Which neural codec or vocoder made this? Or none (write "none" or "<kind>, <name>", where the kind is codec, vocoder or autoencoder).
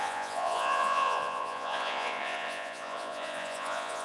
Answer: vocoder, Vocos